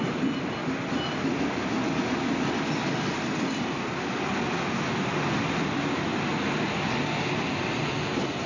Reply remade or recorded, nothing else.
recorded